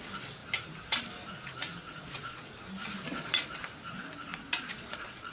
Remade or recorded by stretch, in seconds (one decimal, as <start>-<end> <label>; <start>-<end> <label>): 0.0-1.8 recorded; 1.8-2.5 remade; 2.5-3.0 recorded; 3.0-3.6 remade; 3.6-4.3 recorded; 4.3-5.3 remade